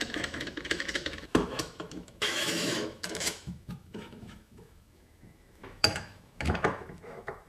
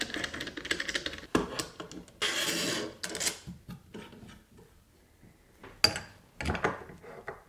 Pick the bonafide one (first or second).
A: second